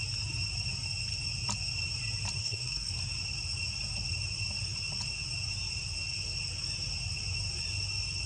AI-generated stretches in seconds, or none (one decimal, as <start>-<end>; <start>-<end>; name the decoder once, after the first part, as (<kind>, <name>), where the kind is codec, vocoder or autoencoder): 2.4-2.9 (codec, SNAC)